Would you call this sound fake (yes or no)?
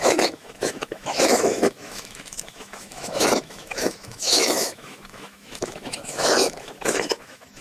yes